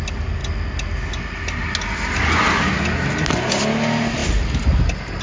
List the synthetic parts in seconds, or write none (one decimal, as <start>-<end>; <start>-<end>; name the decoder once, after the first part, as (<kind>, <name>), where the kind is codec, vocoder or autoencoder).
none